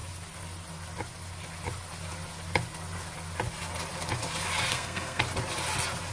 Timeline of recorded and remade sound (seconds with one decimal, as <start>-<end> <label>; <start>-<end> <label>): 0.0-4.7 recorded; 4.7-5.2 remade; 5.2-6.1 recorded